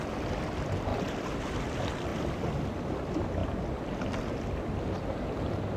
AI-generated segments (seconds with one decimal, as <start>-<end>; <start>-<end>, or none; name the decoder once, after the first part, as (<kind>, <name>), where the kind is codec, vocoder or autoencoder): 0.9-1.5 (vocoder, BigVGAN v2); 2.1-2.9; 3.4-4.2